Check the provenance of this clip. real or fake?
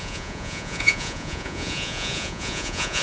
fake